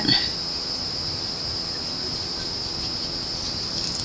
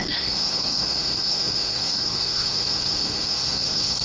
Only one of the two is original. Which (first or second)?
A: first